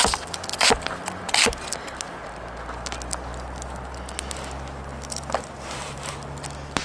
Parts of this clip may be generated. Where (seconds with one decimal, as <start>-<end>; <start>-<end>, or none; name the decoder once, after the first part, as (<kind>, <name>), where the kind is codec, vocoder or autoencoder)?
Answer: 0.0-1.6 (vocoder, BigVGAN v2); 4.9-6.1